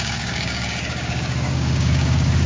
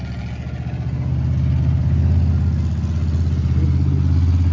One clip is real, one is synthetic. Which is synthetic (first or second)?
first